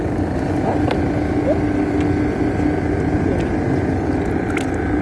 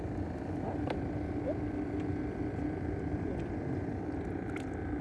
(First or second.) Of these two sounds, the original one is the first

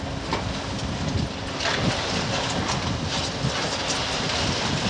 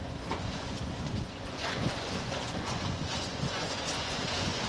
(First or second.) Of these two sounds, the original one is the first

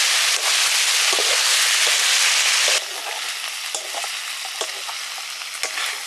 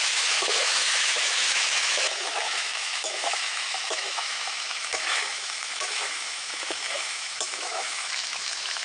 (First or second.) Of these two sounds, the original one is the first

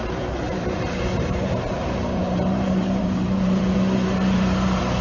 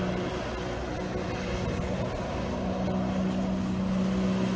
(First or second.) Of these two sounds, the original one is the second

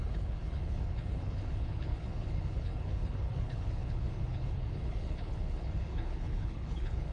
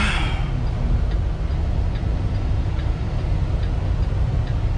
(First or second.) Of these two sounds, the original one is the second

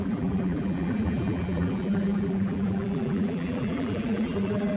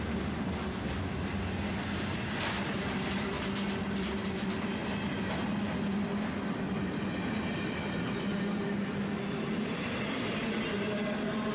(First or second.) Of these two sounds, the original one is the second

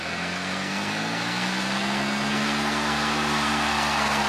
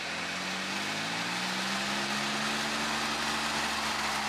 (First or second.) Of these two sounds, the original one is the second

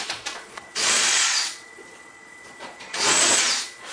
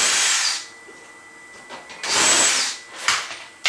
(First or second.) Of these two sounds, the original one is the second